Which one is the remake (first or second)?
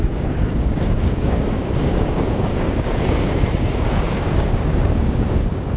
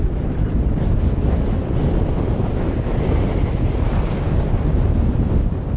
first